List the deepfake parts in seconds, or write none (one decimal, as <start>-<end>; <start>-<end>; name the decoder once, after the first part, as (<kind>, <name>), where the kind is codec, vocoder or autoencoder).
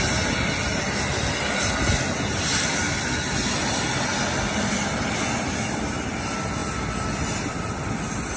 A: none